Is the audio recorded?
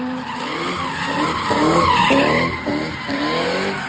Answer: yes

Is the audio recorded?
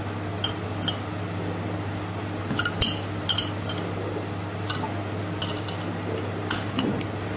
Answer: yes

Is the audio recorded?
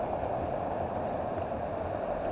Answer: yes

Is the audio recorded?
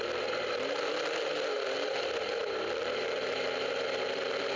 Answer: yes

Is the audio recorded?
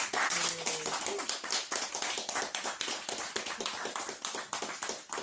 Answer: yes